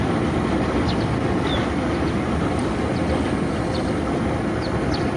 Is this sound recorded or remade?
recorded